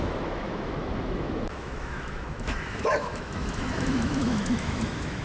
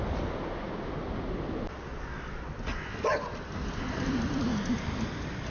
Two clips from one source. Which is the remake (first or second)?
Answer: first